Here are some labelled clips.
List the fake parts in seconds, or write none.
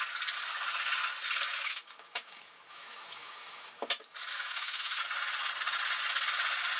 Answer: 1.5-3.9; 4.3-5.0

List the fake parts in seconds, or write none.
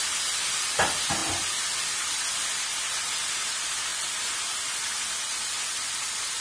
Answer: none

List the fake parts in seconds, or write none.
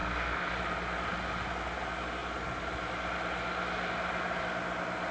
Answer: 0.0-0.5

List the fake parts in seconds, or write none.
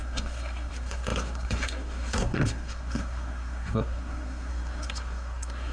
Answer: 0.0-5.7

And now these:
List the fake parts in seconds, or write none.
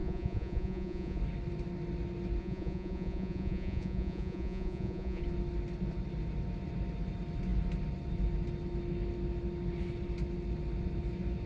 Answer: 0.0-1.2; 2.4-5.2